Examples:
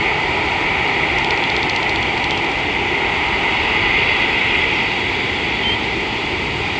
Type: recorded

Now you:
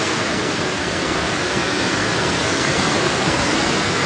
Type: remade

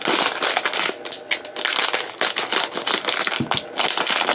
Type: recorded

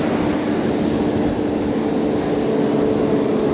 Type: recorded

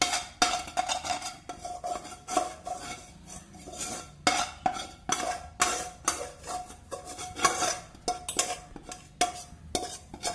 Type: recorded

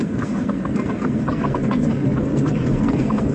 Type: remade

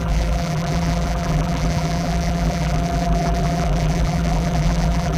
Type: remade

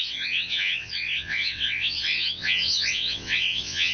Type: remade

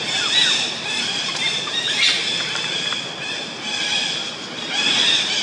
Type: recorded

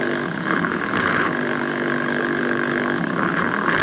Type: remade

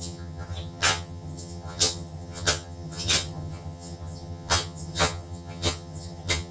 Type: remade